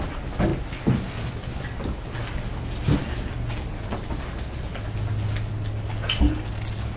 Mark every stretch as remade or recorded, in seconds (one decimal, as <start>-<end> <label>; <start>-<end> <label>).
0.0-7.0 recorded